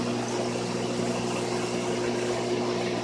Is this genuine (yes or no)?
yes